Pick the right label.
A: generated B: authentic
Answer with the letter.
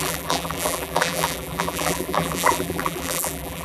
A